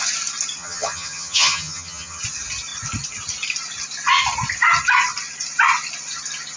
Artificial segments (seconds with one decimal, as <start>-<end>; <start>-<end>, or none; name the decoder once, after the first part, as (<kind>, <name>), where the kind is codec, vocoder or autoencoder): 0.6-2.2 (vocoder, HiFi-GAN)